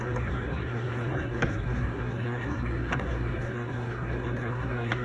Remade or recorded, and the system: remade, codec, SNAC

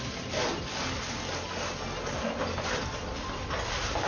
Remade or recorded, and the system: recorded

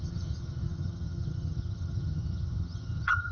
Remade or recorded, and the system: remade, vocoder, HiFi-GAN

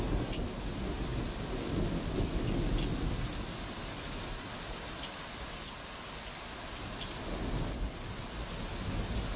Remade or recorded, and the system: recorded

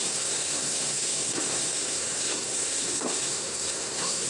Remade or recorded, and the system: remade, codec, SNAC